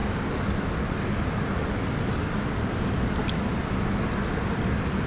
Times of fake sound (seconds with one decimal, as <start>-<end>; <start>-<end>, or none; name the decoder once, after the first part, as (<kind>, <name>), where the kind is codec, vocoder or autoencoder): none